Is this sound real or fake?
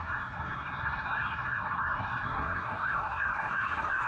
fake